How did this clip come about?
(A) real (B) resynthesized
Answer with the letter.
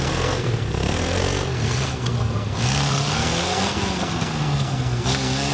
B